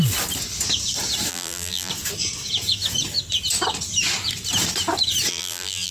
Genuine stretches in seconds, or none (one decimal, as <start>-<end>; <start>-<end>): 0.0-1.3; 1.9-5.3